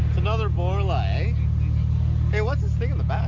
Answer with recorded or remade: recorded